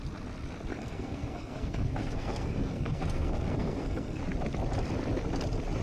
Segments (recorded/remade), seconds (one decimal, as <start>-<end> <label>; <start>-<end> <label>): 0.0-0.7 recorded; 0.7-4.2 remade; 4.2-5.8 recorded